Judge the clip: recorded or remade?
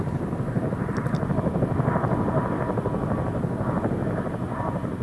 recorded